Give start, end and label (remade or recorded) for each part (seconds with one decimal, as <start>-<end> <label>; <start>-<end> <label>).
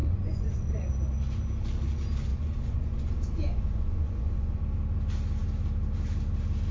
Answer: 0.0-0.9 remade; 0.9-2.3 recorded; 2.3-4.6 remade; 4.6-6.7 recorded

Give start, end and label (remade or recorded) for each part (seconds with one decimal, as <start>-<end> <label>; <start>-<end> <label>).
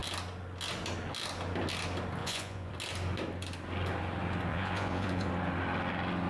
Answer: 0.0-2.2 recorded; 2.2-2.7 remade; 2.7-4.5 recorded; 4.5-5.3 remade; 5.3-6.3 recorded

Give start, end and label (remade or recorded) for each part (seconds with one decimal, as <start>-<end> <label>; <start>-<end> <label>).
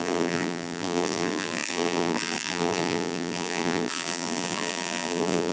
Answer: 0.0-5.5 remade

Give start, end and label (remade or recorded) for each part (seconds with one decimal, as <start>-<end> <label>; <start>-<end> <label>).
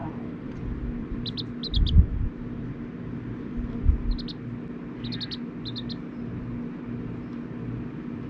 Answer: 0.0-2.7 remade; 2.7-8.3 recorded